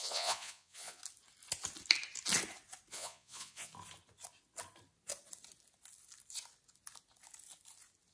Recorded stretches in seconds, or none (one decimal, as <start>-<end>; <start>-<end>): 1.0-2.9; 3.7-8.1